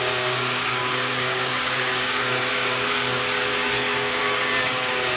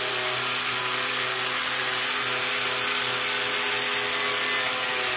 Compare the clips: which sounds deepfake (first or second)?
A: first